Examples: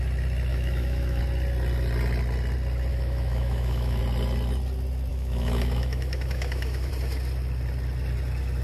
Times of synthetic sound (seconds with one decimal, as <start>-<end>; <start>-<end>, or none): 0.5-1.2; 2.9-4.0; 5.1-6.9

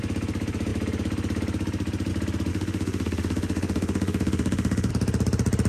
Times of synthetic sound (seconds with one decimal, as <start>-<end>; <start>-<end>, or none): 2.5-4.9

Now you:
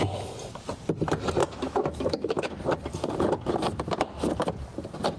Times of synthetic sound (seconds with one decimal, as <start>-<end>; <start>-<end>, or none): 1.4-2.6

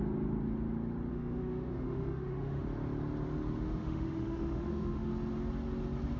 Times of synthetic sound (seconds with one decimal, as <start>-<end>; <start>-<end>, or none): 1.1-2.6; 3.8-5.1

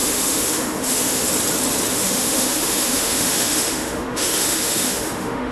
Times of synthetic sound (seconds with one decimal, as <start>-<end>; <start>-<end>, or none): 0.0-1.3; 1.9-5.5

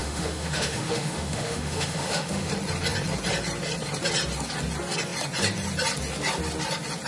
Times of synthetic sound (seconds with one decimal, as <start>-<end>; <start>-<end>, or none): 0.0-2.5

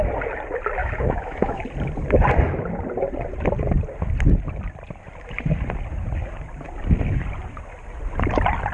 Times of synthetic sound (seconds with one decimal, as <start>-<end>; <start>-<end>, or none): 0.8-1.6

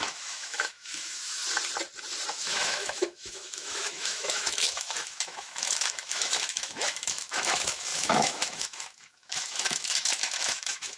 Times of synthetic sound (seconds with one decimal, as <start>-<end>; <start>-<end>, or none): 0.0-1.4; 2.3-11.0